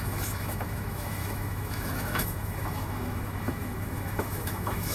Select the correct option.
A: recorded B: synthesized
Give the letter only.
B